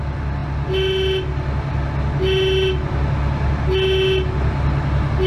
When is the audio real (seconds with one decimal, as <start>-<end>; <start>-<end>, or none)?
0.0-5.3